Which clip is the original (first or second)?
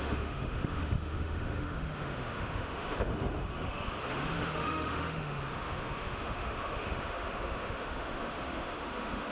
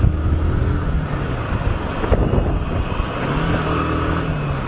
second